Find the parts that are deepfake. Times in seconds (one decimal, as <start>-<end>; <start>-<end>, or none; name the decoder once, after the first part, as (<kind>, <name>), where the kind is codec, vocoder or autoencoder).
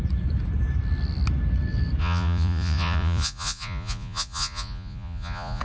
2.0-5.6 (vocoder, Vocos)